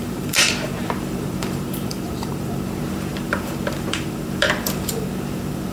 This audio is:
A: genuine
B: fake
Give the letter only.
B